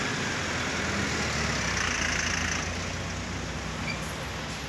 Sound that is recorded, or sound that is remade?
recorded